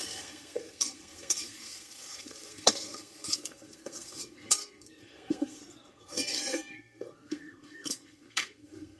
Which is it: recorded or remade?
remade